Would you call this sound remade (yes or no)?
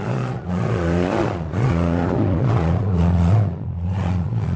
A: yes